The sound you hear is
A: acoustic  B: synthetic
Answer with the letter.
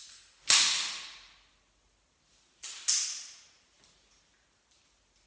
A